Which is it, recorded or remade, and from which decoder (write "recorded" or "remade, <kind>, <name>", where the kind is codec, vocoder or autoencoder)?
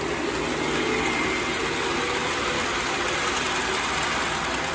recorded